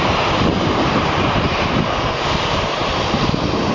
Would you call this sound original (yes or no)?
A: yes